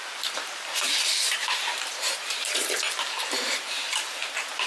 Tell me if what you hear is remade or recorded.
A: remade